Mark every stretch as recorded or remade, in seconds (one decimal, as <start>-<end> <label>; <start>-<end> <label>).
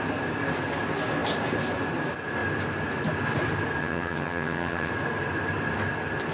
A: 0.0-3.8 recorded; 3.8-4.9 remade; 4.9-6.3 recorded